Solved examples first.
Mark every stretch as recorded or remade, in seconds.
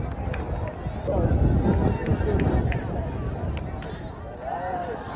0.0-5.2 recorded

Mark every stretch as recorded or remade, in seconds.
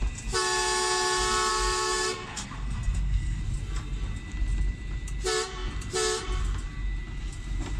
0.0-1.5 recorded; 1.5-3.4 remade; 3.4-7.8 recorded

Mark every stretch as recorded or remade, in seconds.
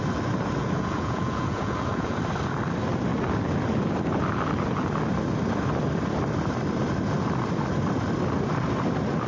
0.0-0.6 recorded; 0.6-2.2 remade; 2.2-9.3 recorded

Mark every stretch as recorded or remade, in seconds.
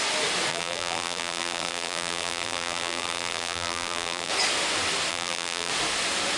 0.0-0.5 recorded; 0.5-4.3 remade; 4.3-5.1 recorded; 5.1-5.7 remade; 5.7-6.4 recorded